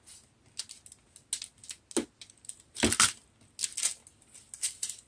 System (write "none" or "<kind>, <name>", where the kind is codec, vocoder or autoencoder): none